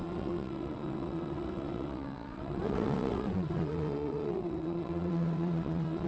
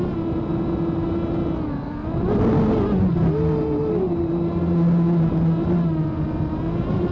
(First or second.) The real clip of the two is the second